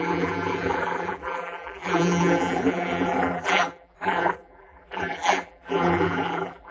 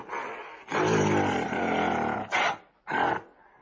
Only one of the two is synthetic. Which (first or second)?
first